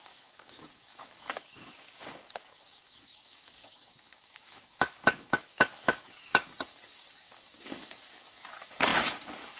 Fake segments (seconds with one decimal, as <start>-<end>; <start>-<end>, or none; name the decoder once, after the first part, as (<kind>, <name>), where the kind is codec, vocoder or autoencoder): 0.0-9.6 (codec, DAC)